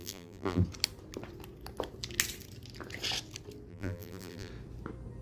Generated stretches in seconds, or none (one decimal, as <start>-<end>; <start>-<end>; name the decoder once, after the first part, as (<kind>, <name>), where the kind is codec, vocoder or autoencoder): 0.0-0.6 (vocoder, BigVGAN v2); 3.7-4.5